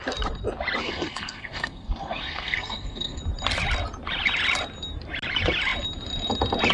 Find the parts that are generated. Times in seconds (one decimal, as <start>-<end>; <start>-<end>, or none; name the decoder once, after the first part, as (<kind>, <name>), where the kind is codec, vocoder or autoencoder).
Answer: 0.8-3.2 (codec, SNAC)